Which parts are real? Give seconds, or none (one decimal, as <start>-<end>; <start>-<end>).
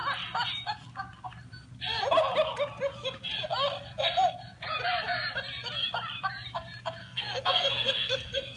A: 0.0-7.0